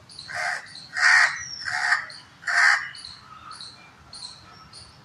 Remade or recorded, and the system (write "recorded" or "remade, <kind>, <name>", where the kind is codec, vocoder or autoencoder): recorded